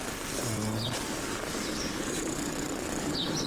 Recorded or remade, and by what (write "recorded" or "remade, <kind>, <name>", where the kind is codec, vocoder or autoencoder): remade, vocoder, BigVGAN v2